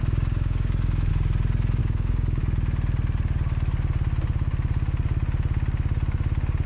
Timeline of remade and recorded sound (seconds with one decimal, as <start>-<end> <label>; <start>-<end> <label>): 0.0-1.1 remade; 1.1-1.8 recorded; 1.8-2.4 remade; 2.4-6.7 recorded